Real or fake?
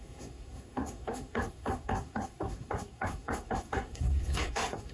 fake